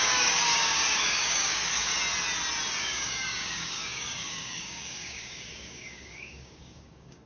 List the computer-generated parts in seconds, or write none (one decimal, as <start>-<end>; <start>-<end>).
0.0-1.9; 2.8-7.3